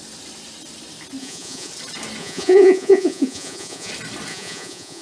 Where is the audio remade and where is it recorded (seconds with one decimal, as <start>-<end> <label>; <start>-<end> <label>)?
0.0-1.2 recorded; 1.2-1.7 remade; 1.7-2.2 recorded; 2.2-3.9 remade; 3.9-4.3 recorded; 4.3-5.0 remade